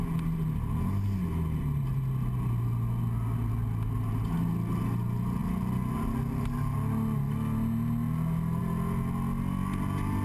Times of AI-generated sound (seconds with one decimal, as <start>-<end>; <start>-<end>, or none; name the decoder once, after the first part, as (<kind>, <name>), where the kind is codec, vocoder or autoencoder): none